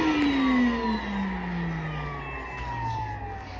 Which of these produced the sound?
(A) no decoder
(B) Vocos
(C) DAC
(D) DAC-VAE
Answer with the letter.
A